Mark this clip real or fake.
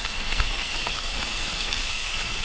fake